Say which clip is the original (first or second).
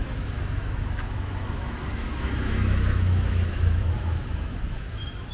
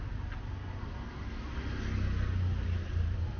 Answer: second